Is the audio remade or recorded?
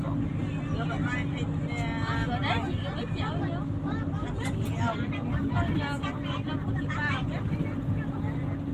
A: recorded